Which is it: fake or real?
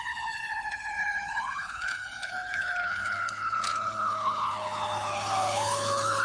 fake